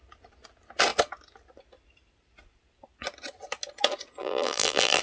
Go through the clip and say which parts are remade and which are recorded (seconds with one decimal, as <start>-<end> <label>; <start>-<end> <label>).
0.0-4.2 recorded; 4.2-5.0 remade